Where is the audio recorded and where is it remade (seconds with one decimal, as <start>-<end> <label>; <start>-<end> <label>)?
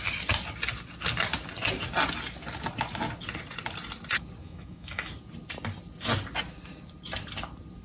0.0-4.4 recorded; 4.4-5.1 remade; 5.1-7.8 recorded